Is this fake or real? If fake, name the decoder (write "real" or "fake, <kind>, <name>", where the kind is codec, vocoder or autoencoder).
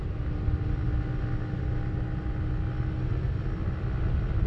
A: real